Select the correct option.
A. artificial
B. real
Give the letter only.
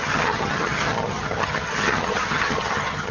A